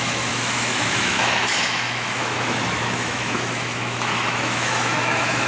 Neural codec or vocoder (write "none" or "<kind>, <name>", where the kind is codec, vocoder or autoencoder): autoencoder, DAC-VAE